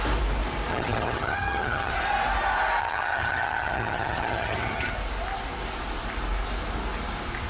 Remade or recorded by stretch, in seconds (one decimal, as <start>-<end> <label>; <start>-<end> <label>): 0.0-0.7 recorded; 0.7-1.9 remade; 1.9-2.8 recorded; 2.8-4.9 remade; 4.9-7.5 recorded